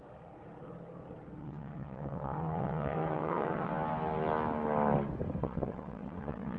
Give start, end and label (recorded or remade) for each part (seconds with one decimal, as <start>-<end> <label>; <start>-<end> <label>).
0.0-1.4 recorded; 1.4-3.7 remade; 3.7-5.4 recorded; 5.4-6.6 remade